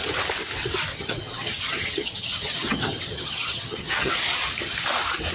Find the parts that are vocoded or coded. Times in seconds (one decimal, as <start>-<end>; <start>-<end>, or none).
0.9-4.1